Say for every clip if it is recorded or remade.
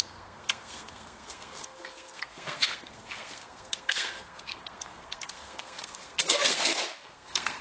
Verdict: remade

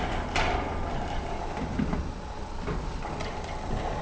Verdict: recorded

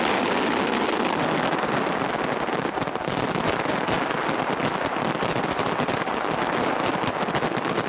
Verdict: recorded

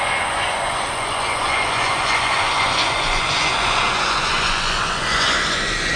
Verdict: remade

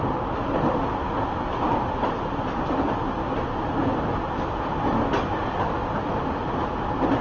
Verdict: recorded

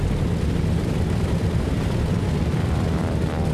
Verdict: recorded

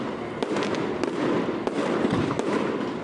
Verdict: recorded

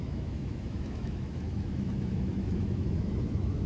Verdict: remade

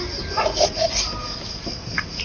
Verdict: recorded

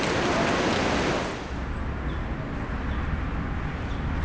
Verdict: recorded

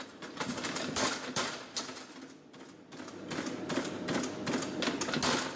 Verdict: recorded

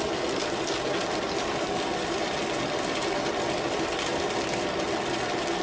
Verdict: recorded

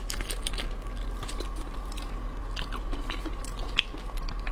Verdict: recorded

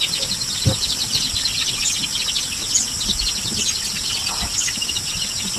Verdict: recorded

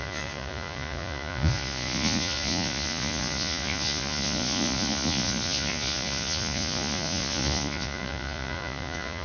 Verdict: remade